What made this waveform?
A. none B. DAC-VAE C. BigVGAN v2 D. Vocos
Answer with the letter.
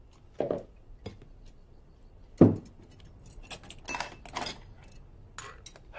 A